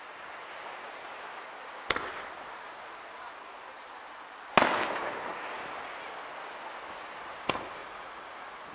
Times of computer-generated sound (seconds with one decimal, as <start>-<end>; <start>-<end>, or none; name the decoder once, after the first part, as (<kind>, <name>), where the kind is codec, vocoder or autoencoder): 7.8-8.7 (vocoder, Vocos)